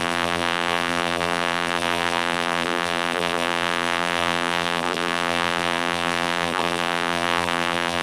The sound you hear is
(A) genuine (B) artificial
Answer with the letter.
B